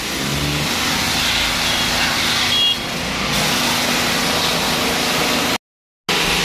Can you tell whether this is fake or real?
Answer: real